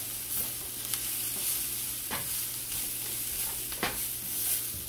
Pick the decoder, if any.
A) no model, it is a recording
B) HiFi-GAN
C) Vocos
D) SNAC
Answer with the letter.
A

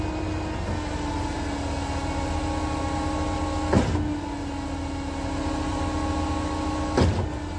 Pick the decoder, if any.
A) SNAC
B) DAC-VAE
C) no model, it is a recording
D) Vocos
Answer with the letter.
C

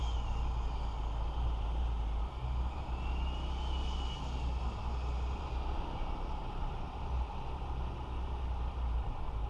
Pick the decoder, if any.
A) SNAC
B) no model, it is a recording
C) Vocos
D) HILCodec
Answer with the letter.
B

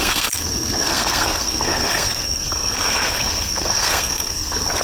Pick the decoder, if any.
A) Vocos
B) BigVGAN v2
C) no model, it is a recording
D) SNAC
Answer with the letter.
D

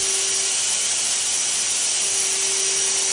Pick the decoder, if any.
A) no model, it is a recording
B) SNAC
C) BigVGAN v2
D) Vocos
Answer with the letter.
A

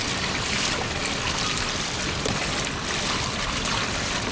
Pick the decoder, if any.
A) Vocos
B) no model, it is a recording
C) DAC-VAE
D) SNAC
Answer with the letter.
B